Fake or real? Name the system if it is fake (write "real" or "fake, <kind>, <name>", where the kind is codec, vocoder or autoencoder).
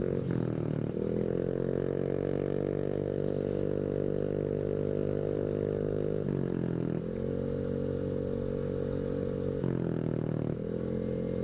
real